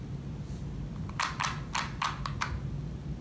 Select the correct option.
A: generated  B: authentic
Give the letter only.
B